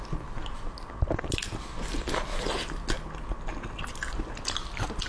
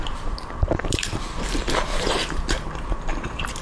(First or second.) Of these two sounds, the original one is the first